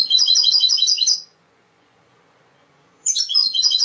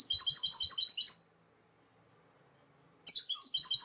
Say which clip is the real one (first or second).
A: second